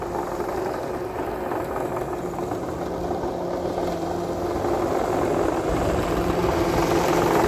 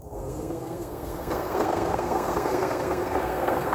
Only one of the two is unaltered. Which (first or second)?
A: first